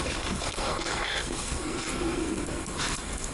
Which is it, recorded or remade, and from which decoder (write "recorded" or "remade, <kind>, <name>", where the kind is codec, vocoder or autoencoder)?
remade, codec, SNAC